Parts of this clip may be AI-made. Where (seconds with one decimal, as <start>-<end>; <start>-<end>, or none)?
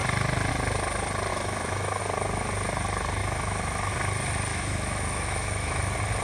1.3-2.0; 3.2-3.9; 4.5-5.8